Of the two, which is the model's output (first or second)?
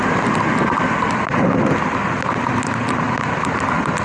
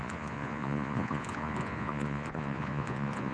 second